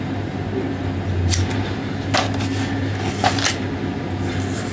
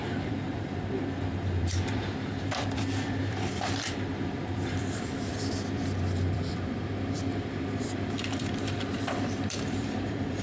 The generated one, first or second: second